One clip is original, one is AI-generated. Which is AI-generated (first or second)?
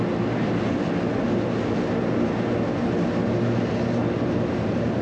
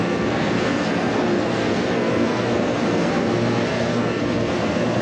second